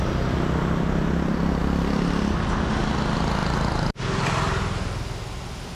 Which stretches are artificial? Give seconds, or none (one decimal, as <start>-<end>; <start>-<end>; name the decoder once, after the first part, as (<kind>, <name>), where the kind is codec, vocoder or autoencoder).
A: none